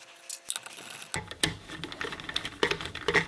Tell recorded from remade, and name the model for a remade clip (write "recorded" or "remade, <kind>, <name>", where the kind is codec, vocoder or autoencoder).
recorded